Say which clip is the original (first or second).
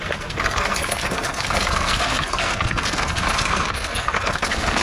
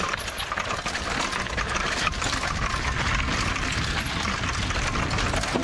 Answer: second